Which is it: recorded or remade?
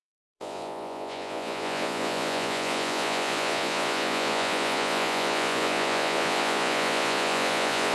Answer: remade